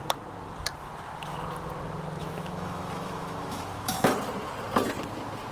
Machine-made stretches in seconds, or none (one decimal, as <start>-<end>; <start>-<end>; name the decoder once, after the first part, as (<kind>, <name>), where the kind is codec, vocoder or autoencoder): 2.2-4.1 (autoencoder, DAC-VAE)